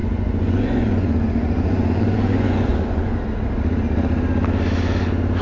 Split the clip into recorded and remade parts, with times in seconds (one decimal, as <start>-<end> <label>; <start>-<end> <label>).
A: 0.0-3.2 remade; 3.2-5.4 recorded